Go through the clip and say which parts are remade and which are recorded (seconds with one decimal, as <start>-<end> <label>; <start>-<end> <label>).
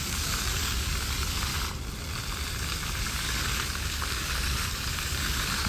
0.0-1.5 remade; 1.5-3.0 recorded; 3.0-5.7 remade